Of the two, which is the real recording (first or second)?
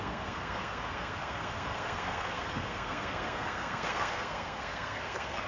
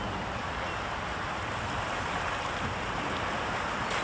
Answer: second